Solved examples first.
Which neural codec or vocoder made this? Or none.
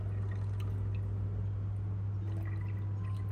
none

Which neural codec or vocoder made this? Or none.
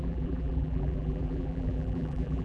vocoder, BigVGAN v2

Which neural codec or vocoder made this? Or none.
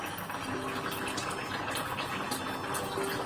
none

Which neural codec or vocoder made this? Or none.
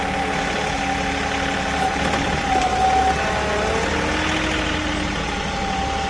none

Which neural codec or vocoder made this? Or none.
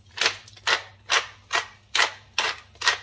none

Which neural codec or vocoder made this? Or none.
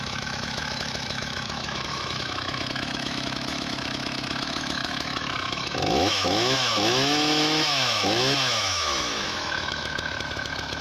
autoencoder, DAC-VAE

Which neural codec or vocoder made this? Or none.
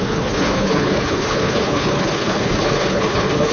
codec, HILCodec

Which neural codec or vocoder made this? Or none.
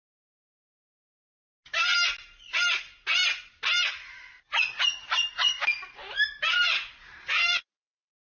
none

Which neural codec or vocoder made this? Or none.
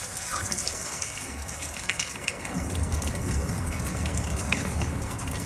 codec, SNAC